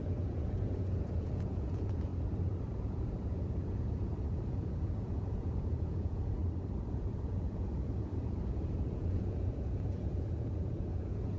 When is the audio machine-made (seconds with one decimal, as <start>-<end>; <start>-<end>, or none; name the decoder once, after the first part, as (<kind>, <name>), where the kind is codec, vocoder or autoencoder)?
0.0-2.1 (vocoder, Vocos); 2.7-6.4; 6.9-11.4